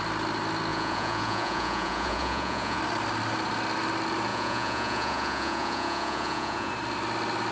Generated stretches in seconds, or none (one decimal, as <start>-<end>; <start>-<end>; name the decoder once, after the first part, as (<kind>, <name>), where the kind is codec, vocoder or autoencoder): 0.7-2.8 (vocoder, Vocos); 4.3-6.7